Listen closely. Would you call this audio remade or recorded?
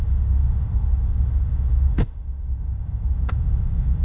remade